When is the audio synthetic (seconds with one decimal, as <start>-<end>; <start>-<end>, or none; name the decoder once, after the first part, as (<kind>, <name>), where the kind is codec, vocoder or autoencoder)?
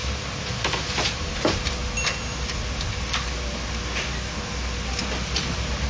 0.0-1.8 (vocoder, BigVGAN v2); 5.3-5.9